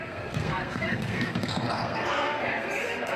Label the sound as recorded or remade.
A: remade